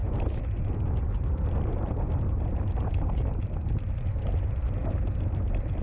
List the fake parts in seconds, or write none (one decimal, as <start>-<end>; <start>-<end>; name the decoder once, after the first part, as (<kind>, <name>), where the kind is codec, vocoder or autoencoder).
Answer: none